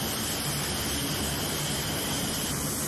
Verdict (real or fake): real